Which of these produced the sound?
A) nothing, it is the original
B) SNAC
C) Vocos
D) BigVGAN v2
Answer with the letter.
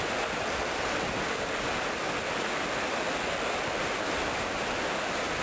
A